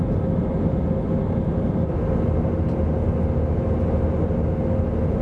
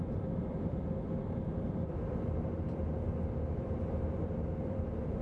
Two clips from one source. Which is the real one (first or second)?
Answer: first